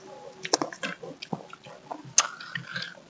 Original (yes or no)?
yes